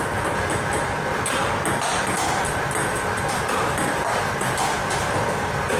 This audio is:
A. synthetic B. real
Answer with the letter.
B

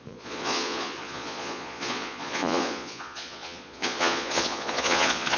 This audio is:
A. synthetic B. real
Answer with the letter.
A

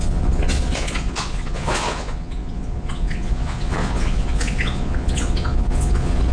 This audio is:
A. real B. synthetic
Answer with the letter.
B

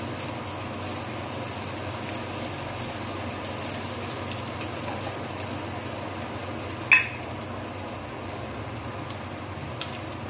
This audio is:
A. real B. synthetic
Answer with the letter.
A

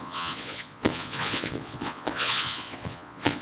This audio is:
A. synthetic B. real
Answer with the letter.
A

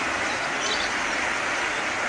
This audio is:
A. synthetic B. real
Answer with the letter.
B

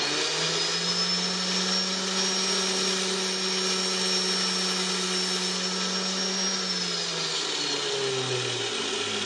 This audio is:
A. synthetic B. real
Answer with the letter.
B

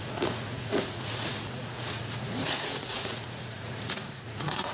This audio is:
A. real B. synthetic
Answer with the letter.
B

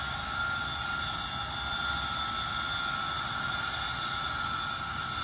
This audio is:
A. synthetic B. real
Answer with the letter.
B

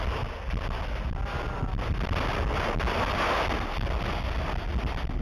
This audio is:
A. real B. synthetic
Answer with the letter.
A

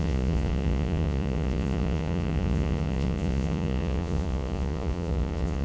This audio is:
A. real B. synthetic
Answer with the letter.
B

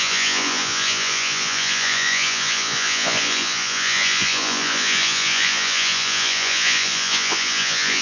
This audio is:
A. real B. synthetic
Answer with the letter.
B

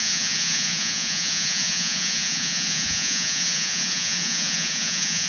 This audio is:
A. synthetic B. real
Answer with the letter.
A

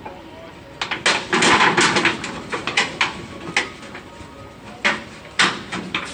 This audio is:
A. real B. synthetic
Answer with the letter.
A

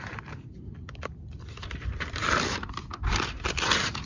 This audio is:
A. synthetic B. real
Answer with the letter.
B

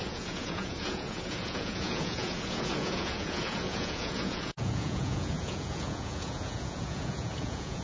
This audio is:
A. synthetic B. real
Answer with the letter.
A